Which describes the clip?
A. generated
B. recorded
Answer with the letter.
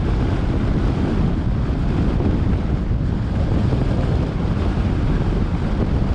A